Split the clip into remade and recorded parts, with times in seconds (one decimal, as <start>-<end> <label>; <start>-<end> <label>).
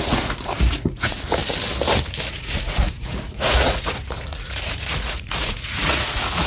0.0-1.4 remade; 1.4-2.3 recorded; 2.3-6.5 remade